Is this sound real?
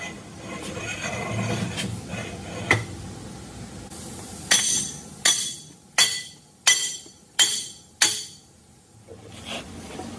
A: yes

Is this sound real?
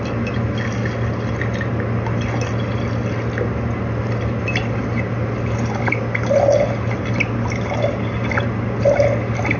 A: yes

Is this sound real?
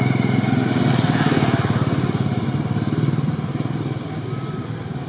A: yes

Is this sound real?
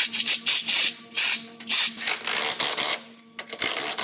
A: yes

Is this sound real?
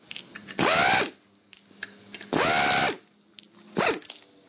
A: yes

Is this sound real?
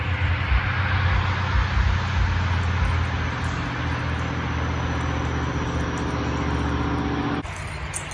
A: yes